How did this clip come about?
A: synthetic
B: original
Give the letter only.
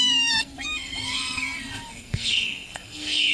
A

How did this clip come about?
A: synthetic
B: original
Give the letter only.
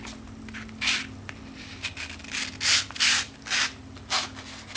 B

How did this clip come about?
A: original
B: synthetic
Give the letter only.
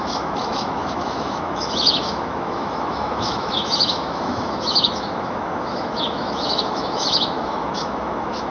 B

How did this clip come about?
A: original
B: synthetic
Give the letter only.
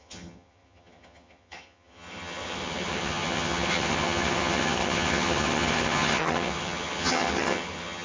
B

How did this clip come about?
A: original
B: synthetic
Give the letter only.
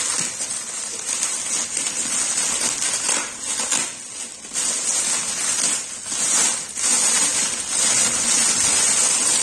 A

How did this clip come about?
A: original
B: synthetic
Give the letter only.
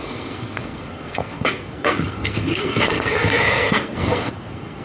B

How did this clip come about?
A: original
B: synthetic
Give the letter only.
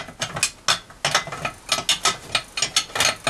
A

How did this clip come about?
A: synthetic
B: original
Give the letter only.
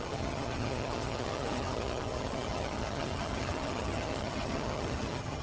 A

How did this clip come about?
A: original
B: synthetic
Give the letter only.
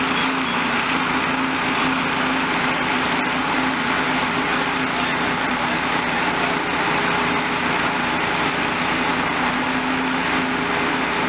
A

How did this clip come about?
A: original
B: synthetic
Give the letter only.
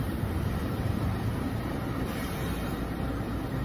B